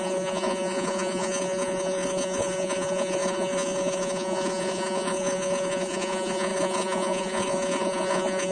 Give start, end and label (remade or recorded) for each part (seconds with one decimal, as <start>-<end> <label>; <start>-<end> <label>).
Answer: 0.0-8.5 remade